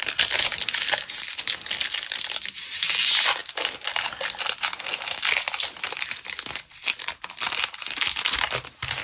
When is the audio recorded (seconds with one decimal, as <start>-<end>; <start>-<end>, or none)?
0.0-9.0